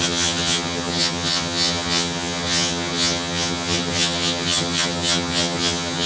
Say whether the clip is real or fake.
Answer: fake